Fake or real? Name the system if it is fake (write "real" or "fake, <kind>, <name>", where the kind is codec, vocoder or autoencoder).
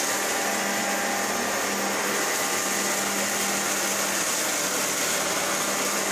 real